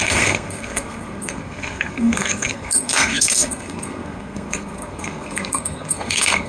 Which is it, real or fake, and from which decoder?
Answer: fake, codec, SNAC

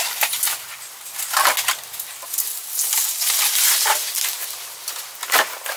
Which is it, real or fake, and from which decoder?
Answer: real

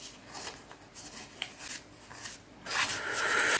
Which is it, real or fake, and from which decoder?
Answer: real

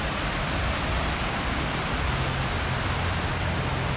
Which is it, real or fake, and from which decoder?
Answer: real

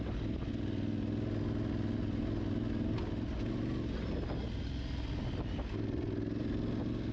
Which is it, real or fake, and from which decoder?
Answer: real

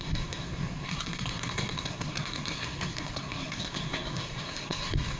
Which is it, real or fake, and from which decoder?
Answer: fake, codec, SNAC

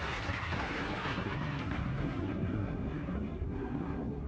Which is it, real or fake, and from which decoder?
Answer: fake, codec, SNAC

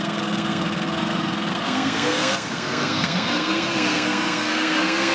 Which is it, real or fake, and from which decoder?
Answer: fake, codec, SNAC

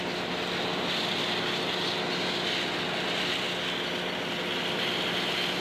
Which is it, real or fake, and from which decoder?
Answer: real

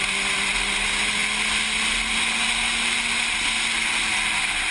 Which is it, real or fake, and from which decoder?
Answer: real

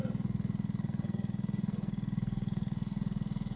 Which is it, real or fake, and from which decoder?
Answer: fake, codec, SNAC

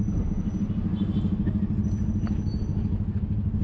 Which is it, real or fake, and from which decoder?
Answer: real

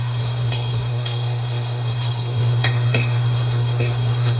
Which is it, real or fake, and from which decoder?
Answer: fake, codec, SNAC